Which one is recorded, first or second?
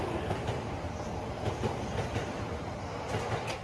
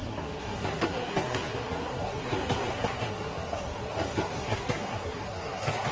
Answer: first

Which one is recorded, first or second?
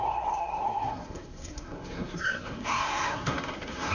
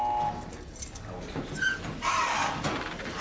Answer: second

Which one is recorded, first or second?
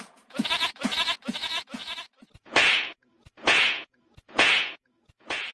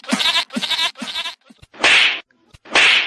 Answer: second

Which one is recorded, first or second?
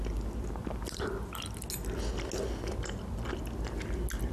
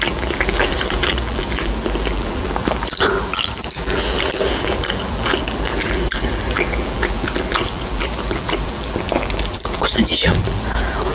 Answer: first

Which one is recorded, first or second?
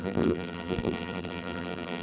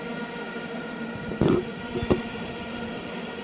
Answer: second